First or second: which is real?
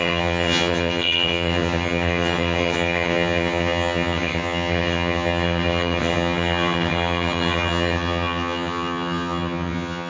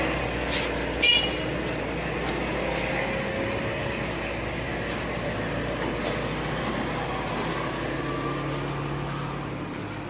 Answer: second